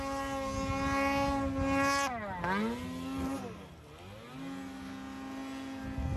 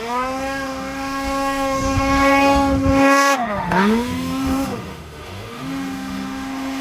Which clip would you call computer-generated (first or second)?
second